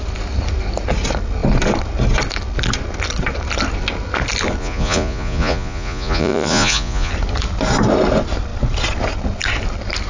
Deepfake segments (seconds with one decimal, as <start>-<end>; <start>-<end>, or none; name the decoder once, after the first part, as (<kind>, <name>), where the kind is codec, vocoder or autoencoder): 4.6-7.1 (vocoder, Vocos)